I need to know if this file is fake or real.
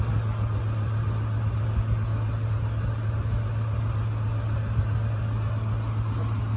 real